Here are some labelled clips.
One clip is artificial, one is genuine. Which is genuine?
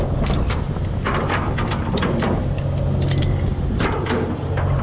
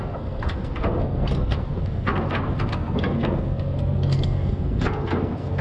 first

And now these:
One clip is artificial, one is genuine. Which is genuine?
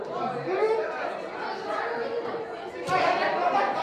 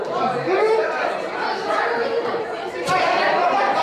first